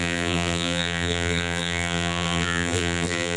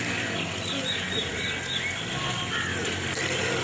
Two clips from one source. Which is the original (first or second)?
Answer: second